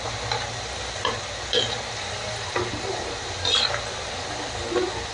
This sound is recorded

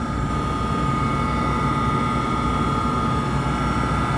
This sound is recorded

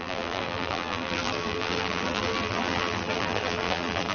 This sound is remade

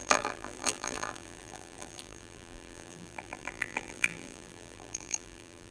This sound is remade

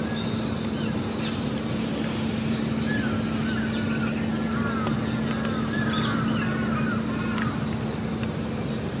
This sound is recorded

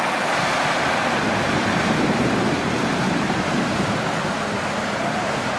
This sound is remade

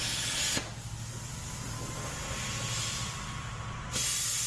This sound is recorded